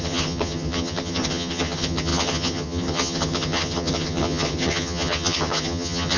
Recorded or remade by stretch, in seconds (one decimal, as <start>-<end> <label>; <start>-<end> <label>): 0.0-6.2 remade